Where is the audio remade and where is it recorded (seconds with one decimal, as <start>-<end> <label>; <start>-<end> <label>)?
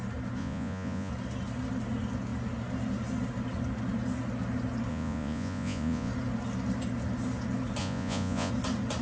0.0-0.4 recorded; 0.4-1.1 remade; 1.1-4.9 recorded; 4.9-6.1 remade; 6.1-7.8 recorded; 7.8-8.5 remade; 8.5-9.0 recorded